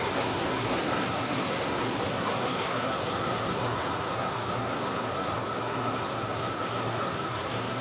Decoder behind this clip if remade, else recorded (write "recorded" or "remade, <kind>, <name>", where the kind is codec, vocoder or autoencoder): remade, codec, SNAC